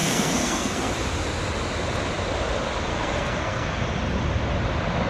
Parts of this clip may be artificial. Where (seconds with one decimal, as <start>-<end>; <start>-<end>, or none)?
0.0-0.9; 2.9-3.8